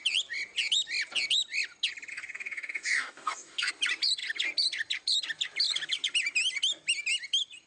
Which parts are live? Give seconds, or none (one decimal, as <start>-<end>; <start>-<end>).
0.0-2.1; 3.7-7.7